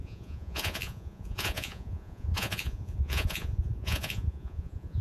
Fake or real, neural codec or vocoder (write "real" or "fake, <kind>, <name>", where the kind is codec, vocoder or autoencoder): fake, vocoder, Vocos